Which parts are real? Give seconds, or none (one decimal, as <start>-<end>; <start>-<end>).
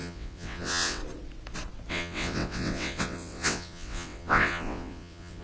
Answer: 1.0-1.9